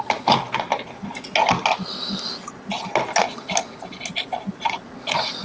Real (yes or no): yes